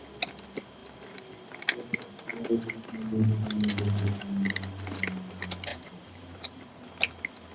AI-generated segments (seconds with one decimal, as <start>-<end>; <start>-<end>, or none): 5.7-6.7